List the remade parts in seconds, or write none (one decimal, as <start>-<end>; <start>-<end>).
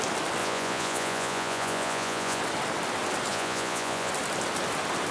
0.4-2.4; 3.3-4.1